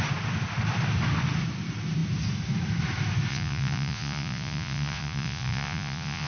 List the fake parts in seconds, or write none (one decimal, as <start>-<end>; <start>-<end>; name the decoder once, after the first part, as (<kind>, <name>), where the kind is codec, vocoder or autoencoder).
3.3-6.3 (vocoder, Vocos)

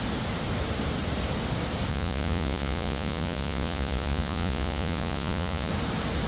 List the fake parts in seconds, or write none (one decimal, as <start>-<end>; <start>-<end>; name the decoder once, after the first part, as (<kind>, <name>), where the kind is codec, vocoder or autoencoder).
1.9-5.7 (vocoder, Vocos)

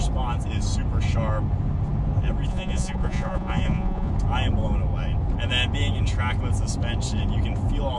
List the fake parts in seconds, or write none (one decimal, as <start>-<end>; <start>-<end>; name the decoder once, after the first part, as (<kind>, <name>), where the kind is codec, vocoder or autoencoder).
2.5-4.1 (vocoder, Vocos)

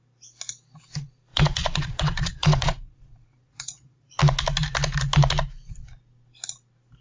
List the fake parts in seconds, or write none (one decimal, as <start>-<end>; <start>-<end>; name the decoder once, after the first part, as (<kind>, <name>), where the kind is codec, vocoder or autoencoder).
1.3-4.2 (vocoder, Vocos)

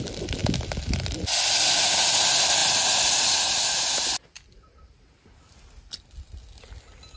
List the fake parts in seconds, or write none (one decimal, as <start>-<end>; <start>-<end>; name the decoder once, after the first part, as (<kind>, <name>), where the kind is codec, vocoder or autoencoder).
none